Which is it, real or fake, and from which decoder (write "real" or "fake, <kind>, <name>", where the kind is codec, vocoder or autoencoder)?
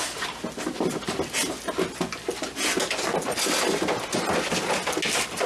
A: real